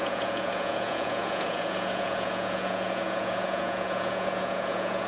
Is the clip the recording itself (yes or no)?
no